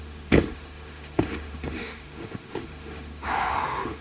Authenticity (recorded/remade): remade